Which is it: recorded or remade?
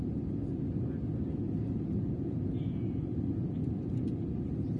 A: recorded